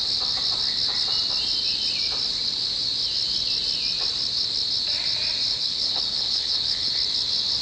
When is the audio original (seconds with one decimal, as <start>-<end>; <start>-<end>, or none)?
0.0-5.5; 6.9-7.6